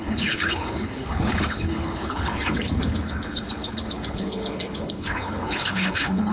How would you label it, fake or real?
fake